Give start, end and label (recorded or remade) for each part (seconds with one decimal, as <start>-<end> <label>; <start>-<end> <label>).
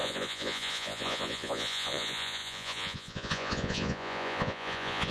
0.0-5.1 remade